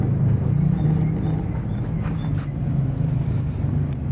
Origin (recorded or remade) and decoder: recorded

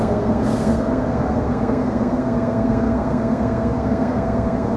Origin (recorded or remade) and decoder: remade, codec, SNAC